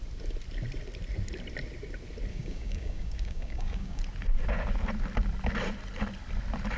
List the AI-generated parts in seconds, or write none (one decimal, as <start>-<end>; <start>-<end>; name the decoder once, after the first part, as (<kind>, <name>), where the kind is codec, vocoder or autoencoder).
2.3-4.0 (codec, DAC)